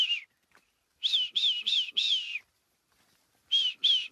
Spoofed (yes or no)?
no